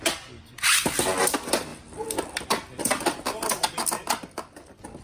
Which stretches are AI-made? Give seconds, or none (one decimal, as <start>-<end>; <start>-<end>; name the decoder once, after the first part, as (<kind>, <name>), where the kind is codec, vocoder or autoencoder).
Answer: 1.7-5.0 (vocoder, BigVGAN v2)